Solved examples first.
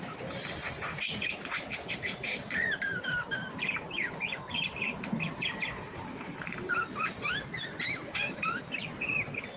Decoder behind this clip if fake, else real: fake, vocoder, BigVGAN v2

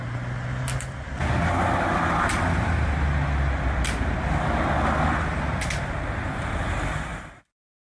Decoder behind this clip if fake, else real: real